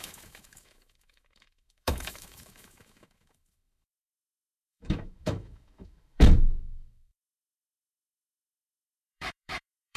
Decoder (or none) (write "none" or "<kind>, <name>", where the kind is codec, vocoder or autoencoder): autoencoder, DAC-VAE